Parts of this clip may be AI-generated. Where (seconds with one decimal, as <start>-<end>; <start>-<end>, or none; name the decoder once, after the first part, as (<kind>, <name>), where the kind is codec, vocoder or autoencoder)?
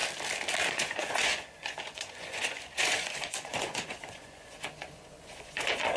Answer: 0.7-6.0 (vocoder, Vocos)